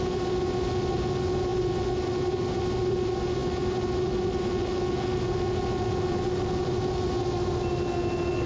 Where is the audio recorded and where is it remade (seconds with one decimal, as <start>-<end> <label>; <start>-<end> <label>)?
0.0-8.5 recorded